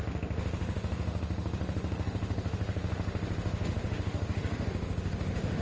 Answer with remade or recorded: remade